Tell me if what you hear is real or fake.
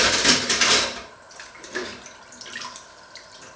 real